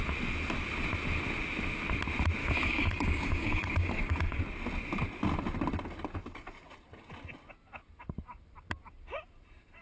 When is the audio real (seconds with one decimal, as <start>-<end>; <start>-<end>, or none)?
0.0-2.4; 4.4-9.8